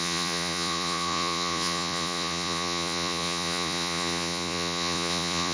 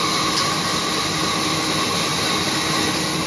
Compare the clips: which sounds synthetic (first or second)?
first